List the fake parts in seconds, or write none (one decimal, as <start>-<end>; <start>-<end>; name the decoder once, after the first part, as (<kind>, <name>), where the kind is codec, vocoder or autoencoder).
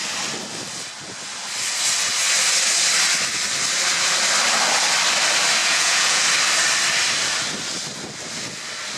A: 5.6-6.2 (vocoder, Vocos)